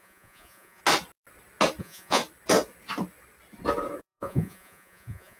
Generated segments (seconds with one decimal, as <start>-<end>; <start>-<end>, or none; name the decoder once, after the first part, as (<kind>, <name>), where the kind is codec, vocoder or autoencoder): 0.0-0.8 (vocoder, Vocos); 1.8-2.2; 4.0-5.4